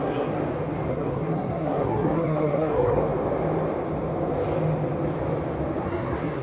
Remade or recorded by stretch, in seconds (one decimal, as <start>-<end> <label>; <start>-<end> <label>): 0.0-0.4 remade; 0.4-0.9 recorded; 0.9-3.0 remade; 3.0-5.8 recorded; 5.8-6.4 remade